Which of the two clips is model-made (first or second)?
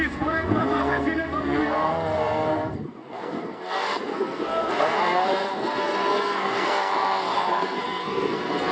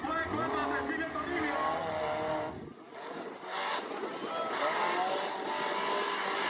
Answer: first